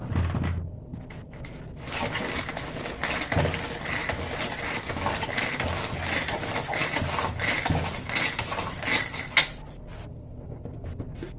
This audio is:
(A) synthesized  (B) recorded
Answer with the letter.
B